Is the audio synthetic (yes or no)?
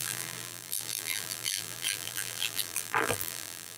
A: yes